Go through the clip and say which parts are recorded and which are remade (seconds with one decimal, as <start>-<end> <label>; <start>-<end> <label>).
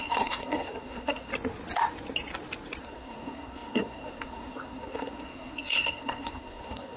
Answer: 0.0-1.3 remade; 1.3-2.8 recorded; 2.8-7.0 remade